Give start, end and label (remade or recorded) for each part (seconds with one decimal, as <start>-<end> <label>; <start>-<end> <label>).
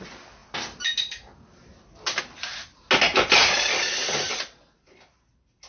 0.0-5.7 recorded